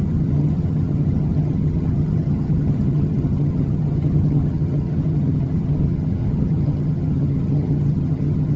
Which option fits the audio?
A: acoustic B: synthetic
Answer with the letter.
B